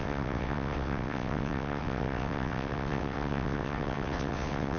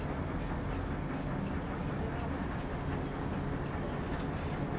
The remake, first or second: first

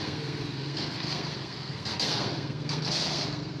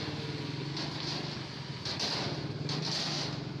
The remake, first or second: first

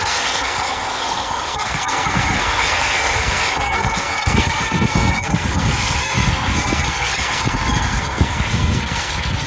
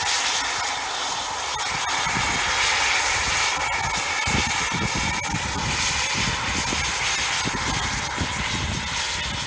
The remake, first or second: first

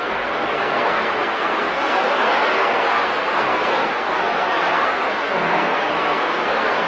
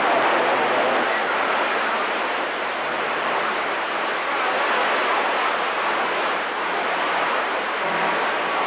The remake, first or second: first